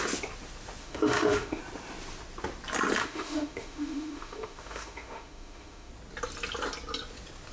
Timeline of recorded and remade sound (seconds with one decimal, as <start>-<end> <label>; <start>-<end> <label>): 0.0-0.8 recorded; 0.8-1.6 remade; 1.6-3.0 recorded; 3.0-5.9 remade; 5.9-7.5 recorded